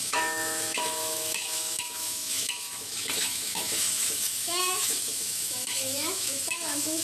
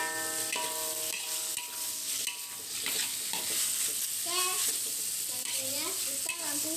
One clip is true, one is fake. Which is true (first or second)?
second